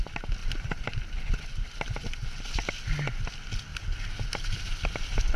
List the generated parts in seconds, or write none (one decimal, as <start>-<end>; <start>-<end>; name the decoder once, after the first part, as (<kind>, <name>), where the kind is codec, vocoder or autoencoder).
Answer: none